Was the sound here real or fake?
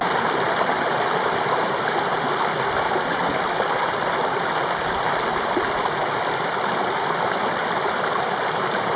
real